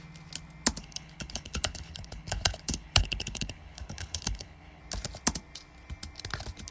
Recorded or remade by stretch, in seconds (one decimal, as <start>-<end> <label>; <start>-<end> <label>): 0.0-0.8 recorded; 0.8-4.8 remade; 4.8-6.7 recorded

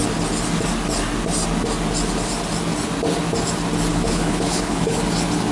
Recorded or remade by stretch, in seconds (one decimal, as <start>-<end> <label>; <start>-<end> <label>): 0.0-3.9 recorded; 3.9-5.0 remade; 5.0-5.5 recorded

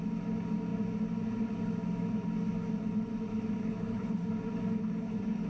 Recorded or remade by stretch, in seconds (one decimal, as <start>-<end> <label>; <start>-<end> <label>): 0.0-3.6 recorded; 3.6-4.3 remade; 4.3-4.8 recorded; 4.8-5.5 remade